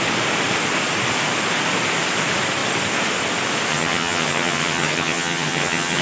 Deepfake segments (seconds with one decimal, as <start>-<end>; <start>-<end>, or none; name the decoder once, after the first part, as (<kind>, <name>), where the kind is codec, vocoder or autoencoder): 3.7-6.0 (vocoder, HiFi-GAN)